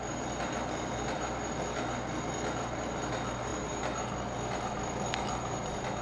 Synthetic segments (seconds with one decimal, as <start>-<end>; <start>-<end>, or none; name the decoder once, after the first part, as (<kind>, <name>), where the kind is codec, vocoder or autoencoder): none